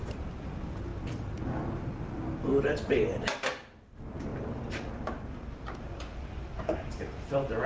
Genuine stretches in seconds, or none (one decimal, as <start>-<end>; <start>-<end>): 0.9-1.8